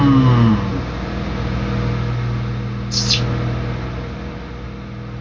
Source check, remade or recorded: recorded